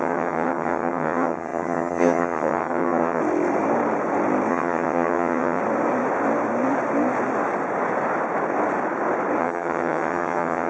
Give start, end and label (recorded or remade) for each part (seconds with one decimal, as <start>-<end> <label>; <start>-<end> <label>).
0.0-3.2 remade; 3.2-4.5 recorded; 4.5-5.6 remade; 5.6-9.4 recorded; 9.4-10.7 remade